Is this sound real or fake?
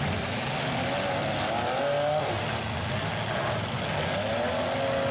real